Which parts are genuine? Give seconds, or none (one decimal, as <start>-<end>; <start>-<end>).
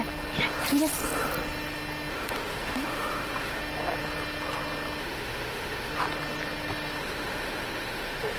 0.0-2.1; 3.6-5.0; 5.9-7.0